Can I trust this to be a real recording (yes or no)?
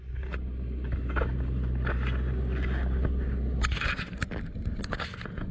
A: yes